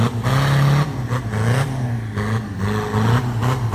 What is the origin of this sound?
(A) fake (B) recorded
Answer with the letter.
B